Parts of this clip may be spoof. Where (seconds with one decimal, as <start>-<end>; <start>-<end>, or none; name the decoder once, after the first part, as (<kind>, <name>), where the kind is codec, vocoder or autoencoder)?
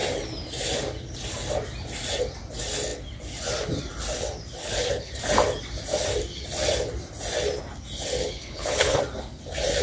4.6-5.1 (codec, HILCodec); 8.2-9.0